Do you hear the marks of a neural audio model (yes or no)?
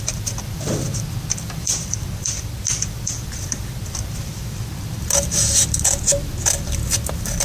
yes